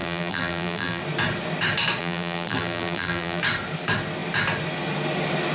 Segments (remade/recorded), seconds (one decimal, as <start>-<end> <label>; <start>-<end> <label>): 0.0-1.0 remade; 1.0-2.0 recorded; 2.0-3.4 remade; 3.4-5.5 recorded